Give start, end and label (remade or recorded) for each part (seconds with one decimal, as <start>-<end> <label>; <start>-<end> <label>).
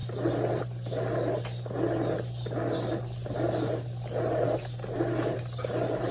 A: 0.0-6.1 recorded